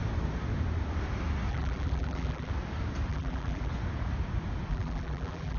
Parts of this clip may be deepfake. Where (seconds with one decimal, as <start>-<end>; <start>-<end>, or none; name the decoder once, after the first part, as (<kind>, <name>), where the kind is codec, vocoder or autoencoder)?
1.5-2.5 (vocoder, BigVGAN v2); 3.1-3.7; 4.7-5.6